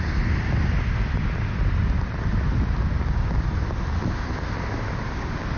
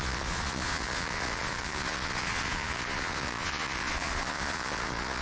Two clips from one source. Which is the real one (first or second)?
first